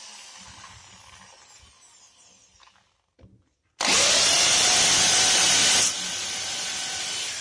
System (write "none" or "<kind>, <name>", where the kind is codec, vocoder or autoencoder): none